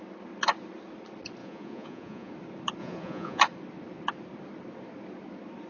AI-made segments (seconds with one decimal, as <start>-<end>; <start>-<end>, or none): 1.4-2.3; 2.8-3.4